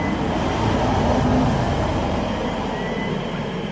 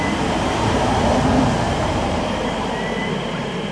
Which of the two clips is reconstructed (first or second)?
second